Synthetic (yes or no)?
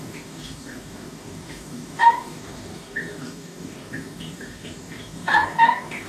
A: yes